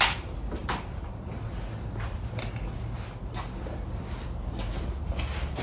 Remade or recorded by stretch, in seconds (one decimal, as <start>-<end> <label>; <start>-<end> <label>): 0.0-5.6 recorded